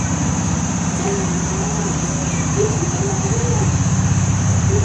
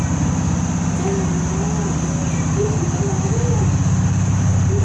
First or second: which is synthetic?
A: first